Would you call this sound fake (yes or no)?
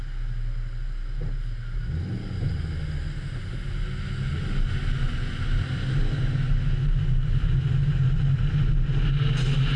no